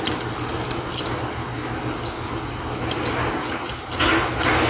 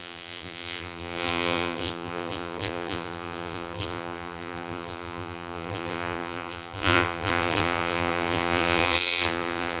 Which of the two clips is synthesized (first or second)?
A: second